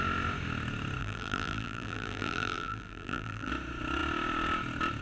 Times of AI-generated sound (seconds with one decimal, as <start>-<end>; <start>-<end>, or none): 1.0-3.5